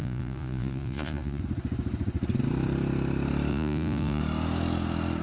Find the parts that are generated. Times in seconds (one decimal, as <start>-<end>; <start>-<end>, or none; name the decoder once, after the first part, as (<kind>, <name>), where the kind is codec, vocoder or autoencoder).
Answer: 0.0-1.4 (vocoder, Vocos); 3.5-4.2

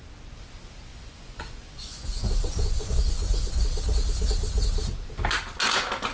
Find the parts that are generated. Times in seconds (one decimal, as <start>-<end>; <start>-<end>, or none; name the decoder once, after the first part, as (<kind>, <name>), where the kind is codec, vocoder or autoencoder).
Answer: 0.9-3.6 (vocoder, Vocos)

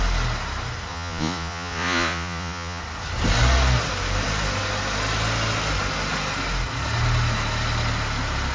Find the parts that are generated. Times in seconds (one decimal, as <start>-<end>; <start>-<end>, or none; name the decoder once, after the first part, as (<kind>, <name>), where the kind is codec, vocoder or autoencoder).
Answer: 0.9-2.8 (vocoder, Vocos)

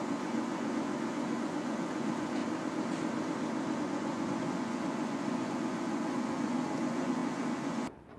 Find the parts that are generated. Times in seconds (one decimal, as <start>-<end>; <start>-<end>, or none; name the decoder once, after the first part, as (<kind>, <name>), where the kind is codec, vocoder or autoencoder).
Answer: 0.0-2.4 (vocoder, Vocos); 3.8-8.2

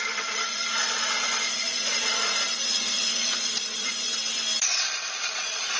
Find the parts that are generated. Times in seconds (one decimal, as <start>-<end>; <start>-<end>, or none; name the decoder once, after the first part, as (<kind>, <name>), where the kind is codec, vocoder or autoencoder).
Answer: 0.0-4.1 (vocoder, Vocos); 5.3-5.8

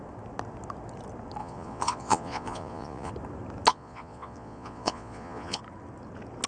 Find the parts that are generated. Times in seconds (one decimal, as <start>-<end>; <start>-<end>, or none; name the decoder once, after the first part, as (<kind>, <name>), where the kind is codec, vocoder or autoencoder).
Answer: 1.4-3.1 (vocoder, Vocos); 3.7-5.6

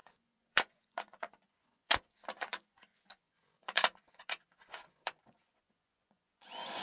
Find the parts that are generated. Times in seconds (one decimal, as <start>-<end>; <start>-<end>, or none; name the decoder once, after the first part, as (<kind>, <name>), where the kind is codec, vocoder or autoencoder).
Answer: 0.0-6.8 (vocoder, Vocos)